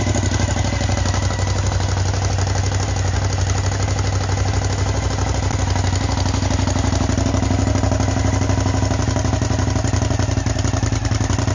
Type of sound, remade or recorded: recorded